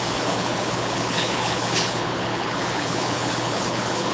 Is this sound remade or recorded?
remade